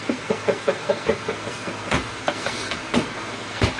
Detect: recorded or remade remade